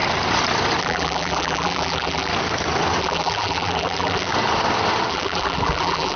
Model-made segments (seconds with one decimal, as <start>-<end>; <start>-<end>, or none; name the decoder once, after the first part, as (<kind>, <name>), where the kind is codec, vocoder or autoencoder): 0.8-2.3 (vocoder, BigVGAN v2); 3.0-4.3; 5.1-6.2